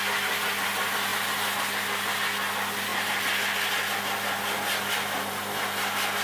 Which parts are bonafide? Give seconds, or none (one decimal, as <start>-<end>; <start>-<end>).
0.0-6.2